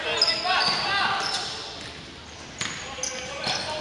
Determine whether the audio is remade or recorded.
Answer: recorded